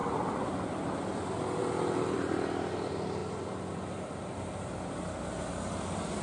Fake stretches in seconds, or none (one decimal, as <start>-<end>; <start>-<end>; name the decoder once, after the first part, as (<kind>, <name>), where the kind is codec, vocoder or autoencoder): none